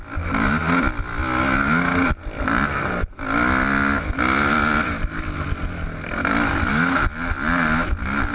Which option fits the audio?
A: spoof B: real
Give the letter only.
B